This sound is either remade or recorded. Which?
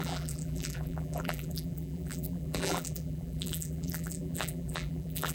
remade